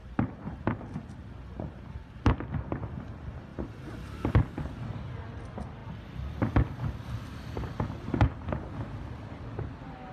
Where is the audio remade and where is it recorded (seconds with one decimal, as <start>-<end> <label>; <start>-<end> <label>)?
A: 0.0-3.5 recorded; 3.5-4.6 remade; 4.6-10.1 recorded